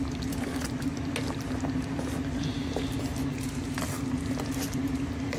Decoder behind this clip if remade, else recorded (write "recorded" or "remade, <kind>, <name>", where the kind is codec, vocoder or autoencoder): recorded